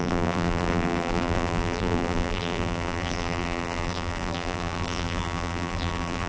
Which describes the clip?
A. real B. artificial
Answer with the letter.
B